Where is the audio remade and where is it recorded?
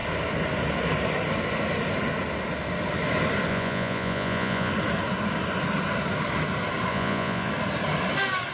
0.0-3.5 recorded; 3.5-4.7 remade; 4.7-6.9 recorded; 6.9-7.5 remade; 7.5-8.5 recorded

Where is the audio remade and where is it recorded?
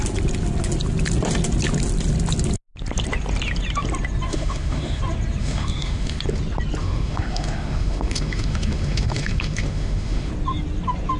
0.0-4.3 recorded; 4.3-5.0 remade; 5.0-5.4 recorded; 5.4-6.2 remade; 6.2-6.8 recorded; 6.8-10.3 remade; 10.3-11.2 recorded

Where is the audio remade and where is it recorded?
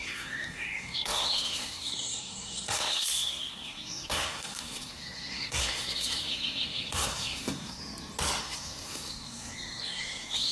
0.0-7.8 remade; 7.8-8.4 recorded; 8.4-10.5 remade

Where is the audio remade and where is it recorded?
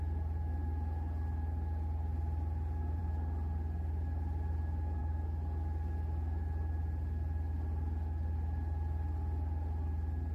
0.0-10.3 recorded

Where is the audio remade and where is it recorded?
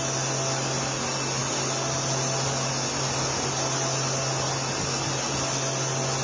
0.0-6.2 recorded